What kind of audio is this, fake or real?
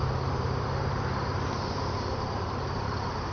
fake